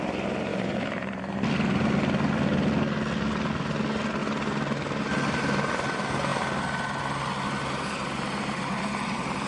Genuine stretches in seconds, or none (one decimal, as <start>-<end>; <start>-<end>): 0.0-0.5; 1.3-9.5